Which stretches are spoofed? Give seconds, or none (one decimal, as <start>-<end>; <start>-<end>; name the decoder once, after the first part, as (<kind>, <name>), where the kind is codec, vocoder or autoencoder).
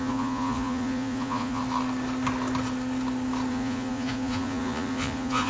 0.0-1.6 (vocoder, Vocos); 3.5-5.5